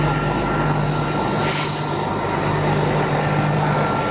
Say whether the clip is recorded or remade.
recorded